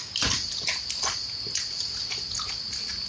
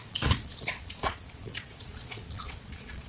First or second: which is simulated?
second